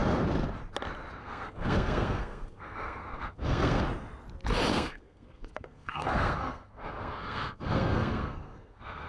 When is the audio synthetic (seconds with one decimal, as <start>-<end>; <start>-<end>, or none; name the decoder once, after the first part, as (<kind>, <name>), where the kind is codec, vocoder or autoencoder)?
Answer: 1.2-3.8 (codec, SNAC); 4.7-9.1